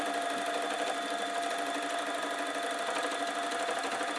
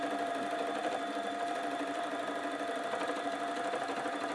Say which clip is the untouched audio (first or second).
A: first